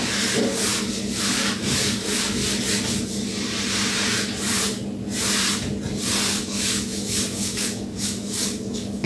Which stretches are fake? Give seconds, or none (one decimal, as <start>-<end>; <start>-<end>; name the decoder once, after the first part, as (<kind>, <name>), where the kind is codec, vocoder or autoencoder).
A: 0.0-0.7 (codec, DAC); 1.3-2.4; 6.3-9.1